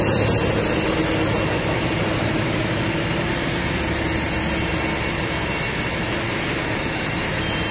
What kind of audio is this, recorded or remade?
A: recorded